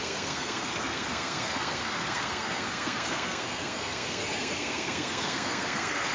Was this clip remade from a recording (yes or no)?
yes